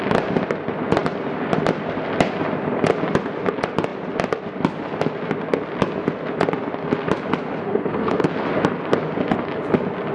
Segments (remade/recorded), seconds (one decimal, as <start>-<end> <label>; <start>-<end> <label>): 0.0-7.6 recorded; 7.6-8.3 remade; 8.3-10.1 recorded